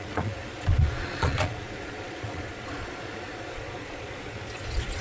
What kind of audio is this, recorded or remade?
remade